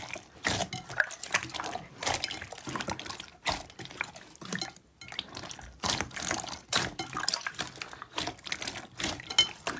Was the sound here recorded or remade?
recorded